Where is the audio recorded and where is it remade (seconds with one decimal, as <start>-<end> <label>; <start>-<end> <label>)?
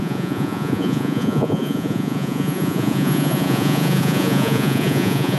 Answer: 0.0-5.4 remade